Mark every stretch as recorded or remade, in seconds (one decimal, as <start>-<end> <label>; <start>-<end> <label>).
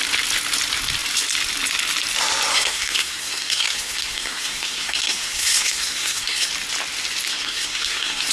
0.0-2.5 recorded; 2.5-6.5 remade; 6.5-7.3 recorded; 7.3-8.3 remade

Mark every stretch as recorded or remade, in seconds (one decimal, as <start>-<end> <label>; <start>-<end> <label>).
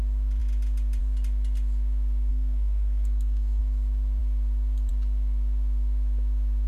0.0-2.3 recorded; 2.3-3.6 remade; 3.6-6.7 recorded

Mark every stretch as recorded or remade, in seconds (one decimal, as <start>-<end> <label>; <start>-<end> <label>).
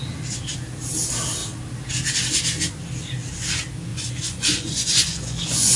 0.0-3.9 recorded; 3.9-5.8 remade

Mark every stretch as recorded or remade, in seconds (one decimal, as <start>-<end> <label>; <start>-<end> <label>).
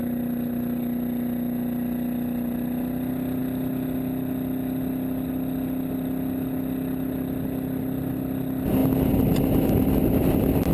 0.0-10.7 recorded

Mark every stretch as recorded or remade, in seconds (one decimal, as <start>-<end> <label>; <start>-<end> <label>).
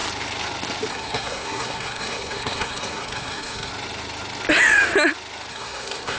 0.0-0.9 recorded; 0.9-3.7 remade; 3.7-5.5 recorded; 5.5-6.2 remade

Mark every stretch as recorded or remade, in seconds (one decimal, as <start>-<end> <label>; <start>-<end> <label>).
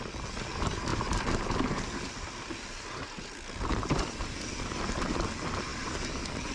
0.0-6.5 recorded